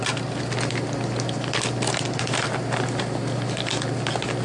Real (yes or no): yes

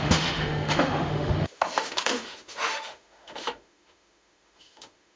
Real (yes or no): no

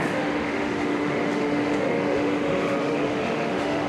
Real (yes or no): no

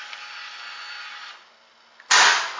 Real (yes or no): yes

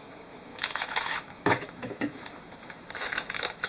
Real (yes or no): no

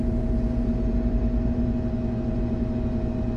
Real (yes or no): yes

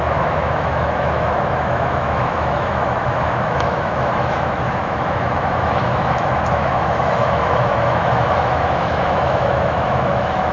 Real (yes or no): no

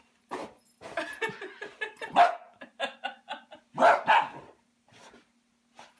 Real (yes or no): yes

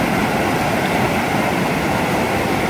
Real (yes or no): yes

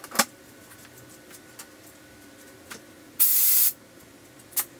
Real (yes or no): yes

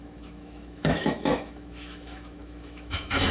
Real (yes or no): no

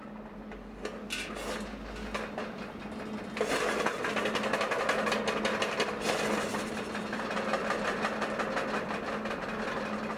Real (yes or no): yes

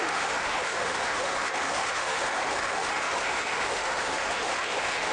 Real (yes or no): no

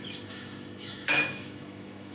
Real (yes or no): no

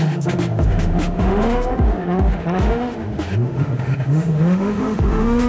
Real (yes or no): no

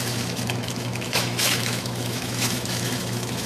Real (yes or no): no